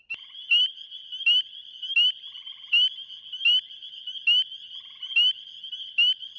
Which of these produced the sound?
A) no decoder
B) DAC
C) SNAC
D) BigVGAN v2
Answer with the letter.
A